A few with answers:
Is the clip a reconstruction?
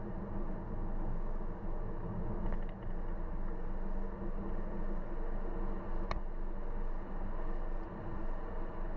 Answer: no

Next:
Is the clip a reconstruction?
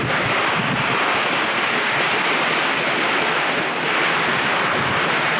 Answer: no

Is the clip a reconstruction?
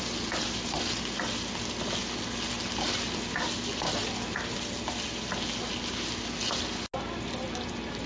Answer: no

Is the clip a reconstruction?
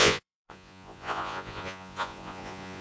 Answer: yes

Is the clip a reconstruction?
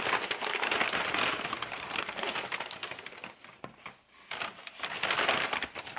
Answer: no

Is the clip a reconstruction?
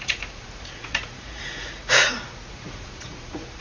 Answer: yes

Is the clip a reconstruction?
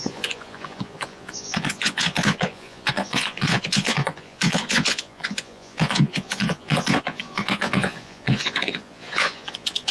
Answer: yes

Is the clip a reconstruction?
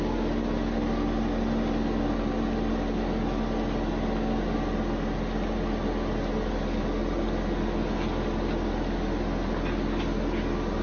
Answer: no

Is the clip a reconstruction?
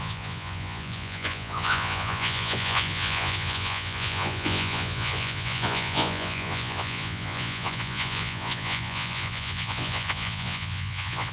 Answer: yes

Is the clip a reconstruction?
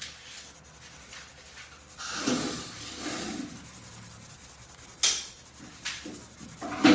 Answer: no